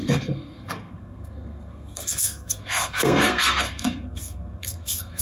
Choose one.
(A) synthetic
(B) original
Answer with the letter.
A